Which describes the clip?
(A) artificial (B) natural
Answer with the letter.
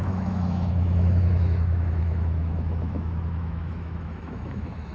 A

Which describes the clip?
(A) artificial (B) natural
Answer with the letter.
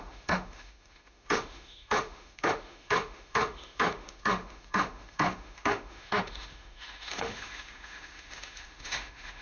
A